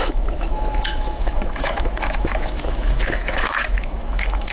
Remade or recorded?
remade